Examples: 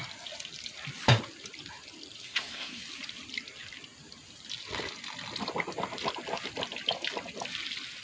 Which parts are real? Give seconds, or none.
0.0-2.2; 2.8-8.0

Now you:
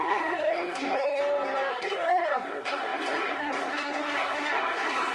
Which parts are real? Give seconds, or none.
1.2-1.7

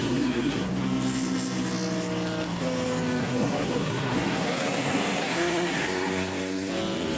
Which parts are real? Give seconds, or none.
0.7-3.2; 6.7-7.2

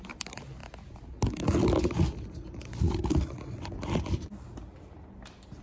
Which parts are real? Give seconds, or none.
0.0-5.6

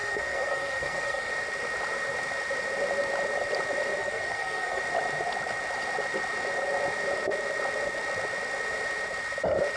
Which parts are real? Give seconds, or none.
1.3-4.0; 4.8-9.8

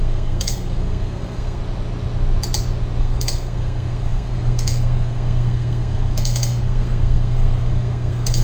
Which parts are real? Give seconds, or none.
1.6-3.0

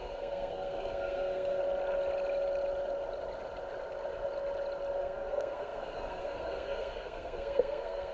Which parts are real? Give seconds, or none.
1.6-5.0